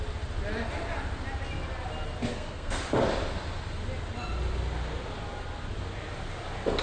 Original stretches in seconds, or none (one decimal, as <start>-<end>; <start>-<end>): 0.0-2.3; 2.8-6.8